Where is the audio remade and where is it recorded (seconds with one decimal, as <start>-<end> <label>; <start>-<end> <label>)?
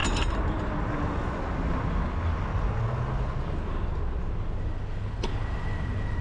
0.0-6.2 recorded